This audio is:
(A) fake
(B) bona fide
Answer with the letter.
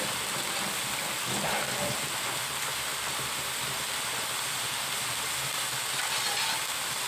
B